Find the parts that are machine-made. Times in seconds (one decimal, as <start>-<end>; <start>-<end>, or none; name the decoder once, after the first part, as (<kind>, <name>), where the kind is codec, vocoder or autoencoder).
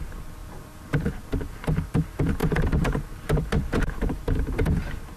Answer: 0.0-5.2 (vocoder, BigVGAN v2)